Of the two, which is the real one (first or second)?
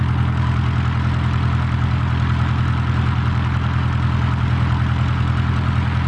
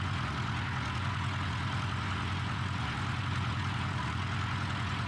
first